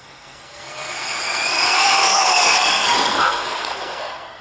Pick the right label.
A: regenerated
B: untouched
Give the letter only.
A